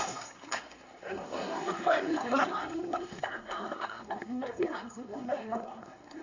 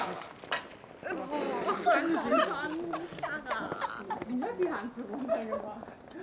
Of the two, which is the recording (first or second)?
second